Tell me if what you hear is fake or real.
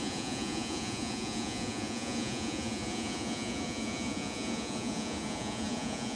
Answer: fake